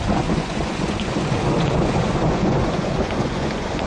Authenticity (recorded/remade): remade